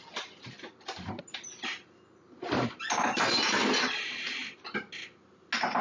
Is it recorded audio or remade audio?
recorded